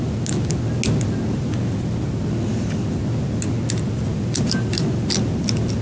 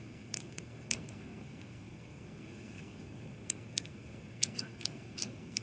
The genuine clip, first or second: first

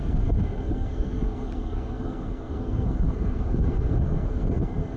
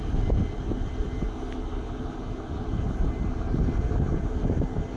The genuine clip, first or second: second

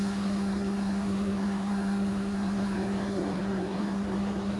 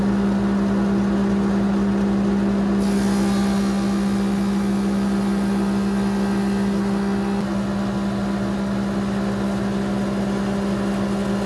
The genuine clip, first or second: second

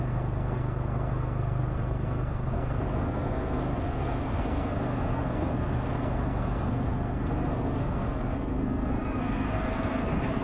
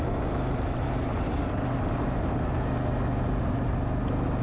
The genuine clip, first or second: second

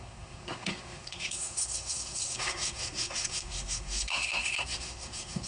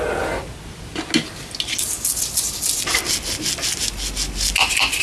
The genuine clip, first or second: second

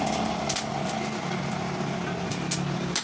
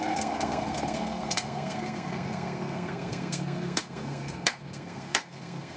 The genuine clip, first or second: first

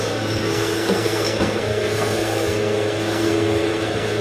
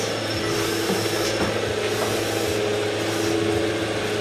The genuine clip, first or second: second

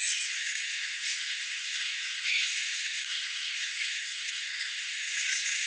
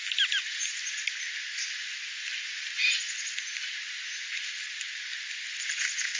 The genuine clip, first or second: second